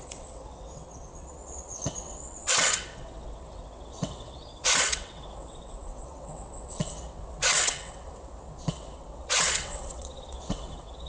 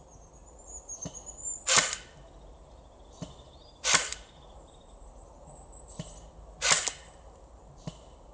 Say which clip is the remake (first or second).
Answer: first